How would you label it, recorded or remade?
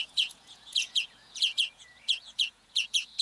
remade